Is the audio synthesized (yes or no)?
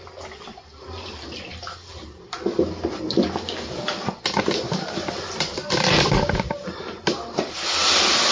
no